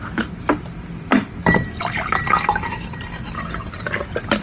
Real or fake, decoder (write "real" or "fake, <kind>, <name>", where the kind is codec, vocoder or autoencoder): real